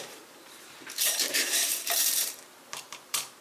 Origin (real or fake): fake